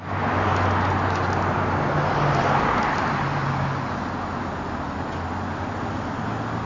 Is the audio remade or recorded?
recorded